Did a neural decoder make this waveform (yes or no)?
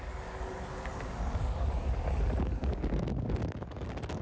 yes